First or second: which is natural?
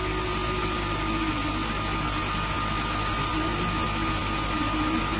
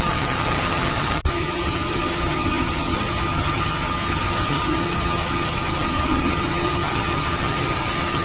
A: first